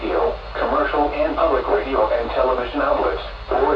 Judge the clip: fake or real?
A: real